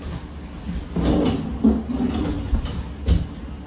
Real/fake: real